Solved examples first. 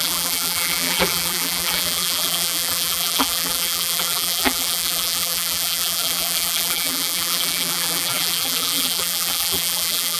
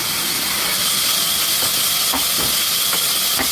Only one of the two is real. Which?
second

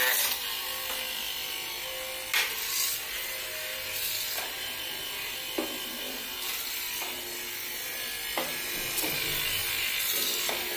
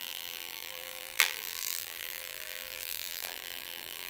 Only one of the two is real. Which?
first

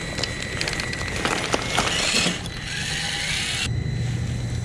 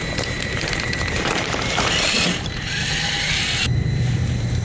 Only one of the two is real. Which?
first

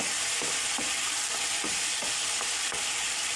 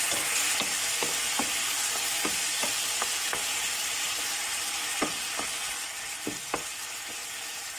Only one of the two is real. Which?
second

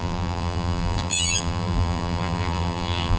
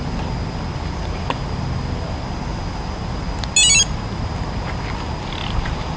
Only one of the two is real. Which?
second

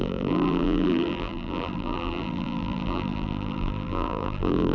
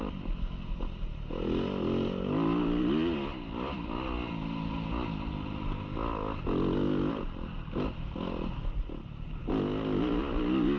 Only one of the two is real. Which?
second